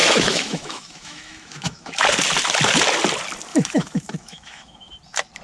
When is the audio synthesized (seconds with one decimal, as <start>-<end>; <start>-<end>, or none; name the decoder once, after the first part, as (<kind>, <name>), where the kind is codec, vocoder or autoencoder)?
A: 0.0-2.0 (autoencoder, DAC-VAE); 3.5-4.9